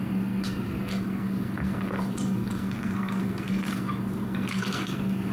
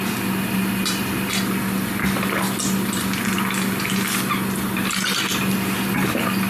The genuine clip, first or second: second